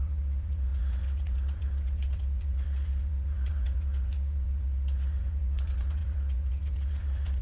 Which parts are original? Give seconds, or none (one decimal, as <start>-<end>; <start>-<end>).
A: none